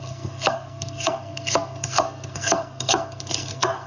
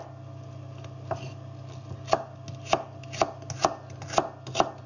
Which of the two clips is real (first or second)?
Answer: second